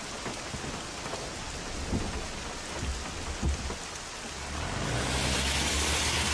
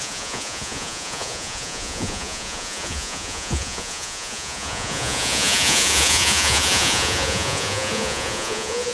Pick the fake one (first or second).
second